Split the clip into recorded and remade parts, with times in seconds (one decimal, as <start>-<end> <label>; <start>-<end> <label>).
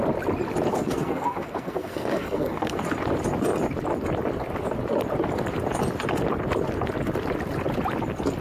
0.0-0.7 recorded; 0.7-2.8 remade; 2.8-8.4 recorded